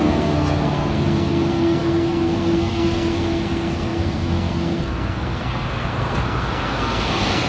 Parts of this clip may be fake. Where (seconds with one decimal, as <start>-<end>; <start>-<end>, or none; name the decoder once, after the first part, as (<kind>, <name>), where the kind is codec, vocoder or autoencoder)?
0.0-7.5 (codec, SNAC)